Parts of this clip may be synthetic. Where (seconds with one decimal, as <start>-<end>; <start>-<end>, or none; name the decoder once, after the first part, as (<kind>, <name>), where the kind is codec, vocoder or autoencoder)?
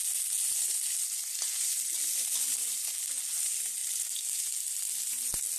none